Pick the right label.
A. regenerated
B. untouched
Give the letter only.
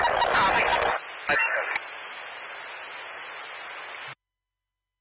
B